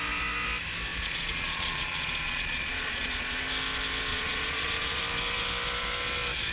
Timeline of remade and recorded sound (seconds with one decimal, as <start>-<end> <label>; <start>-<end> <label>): 0.0-0.9 recorded; 0.9-3.4 remade; 3.4-4.1 recorded; 4.1-5.0 remade; 5.0-6.5 recorded